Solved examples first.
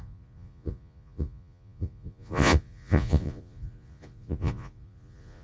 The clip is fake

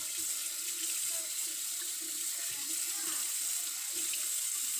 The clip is real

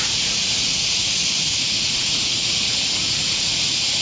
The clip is fake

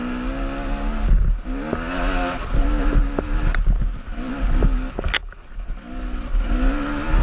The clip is real